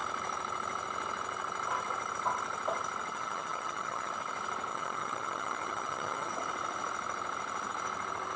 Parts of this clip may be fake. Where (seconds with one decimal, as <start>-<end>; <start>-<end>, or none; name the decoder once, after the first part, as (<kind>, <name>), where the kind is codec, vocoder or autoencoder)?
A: 3.1-4.1 (vocoder, HiFi-GAN); 4.7-6.3